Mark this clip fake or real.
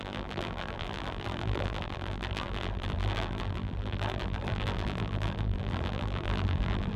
fake